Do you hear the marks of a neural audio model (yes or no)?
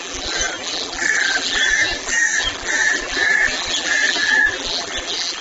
yes